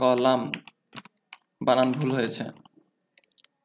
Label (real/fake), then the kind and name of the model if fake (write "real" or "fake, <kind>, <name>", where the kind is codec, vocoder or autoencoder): real